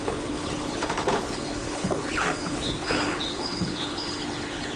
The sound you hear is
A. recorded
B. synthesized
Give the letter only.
B